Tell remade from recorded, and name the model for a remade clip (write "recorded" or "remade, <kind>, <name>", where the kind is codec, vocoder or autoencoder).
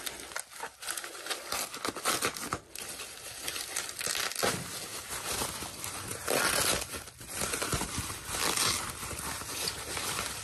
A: recorded